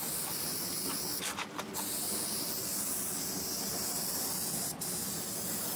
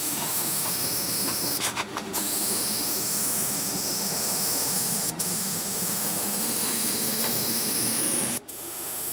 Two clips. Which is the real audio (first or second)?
first